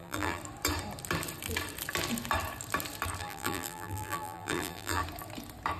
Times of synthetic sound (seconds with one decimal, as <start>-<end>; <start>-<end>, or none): 0.0-0.4; 3.2-5.0